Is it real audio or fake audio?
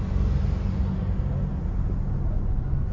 real